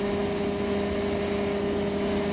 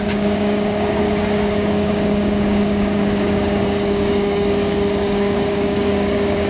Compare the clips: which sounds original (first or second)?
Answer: first